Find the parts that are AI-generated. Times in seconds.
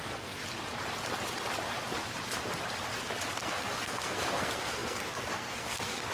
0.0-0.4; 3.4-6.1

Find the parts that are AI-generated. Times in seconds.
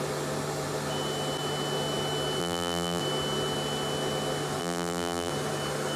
2.4-3.0; 4.6-5.3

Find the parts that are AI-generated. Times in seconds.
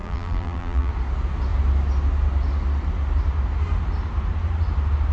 0.0-0.9